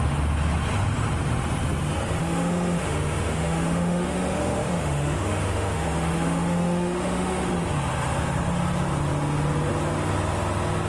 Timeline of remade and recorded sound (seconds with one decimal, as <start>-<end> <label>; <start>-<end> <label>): 0.0-2.2 recorded; 2.2-7.5 remade; 7.5-10.9 recorded